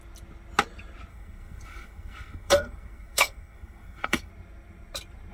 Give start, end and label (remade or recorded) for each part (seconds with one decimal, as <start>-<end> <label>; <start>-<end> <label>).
0.0-1.1 recorded; 1.1-4.3 remade; 4.3-5.3 recorded